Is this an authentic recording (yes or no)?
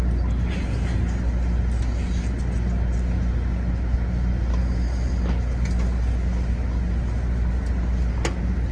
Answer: yes